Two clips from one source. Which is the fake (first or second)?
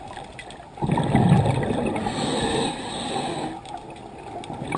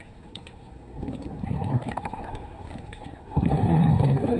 second